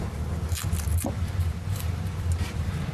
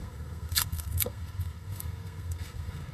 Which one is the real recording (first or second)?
first